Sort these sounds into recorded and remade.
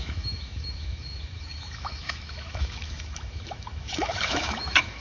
remade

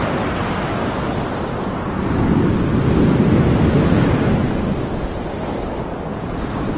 recorded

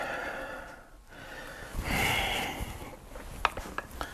recorded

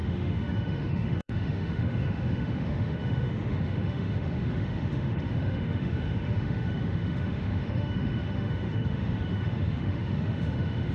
remade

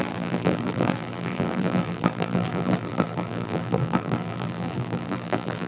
remade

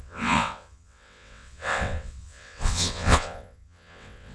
remade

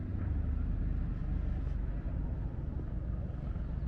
recorded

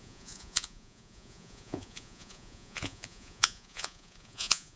remade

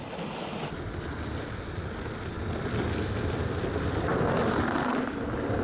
recorded